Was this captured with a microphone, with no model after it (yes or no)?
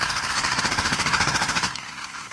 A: no